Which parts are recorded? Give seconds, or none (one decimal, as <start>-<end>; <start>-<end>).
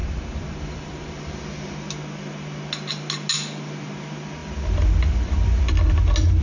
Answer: 1.4-4.4; 5.6-6.4